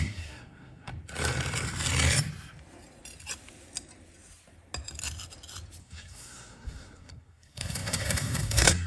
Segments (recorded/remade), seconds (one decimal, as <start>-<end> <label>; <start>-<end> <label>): 0.0-0.9 remade; 0.9-5.8 recorded; 5.8-8.9 remade